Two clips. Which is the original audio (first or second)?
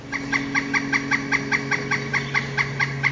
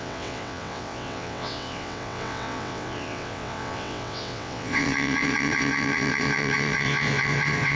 first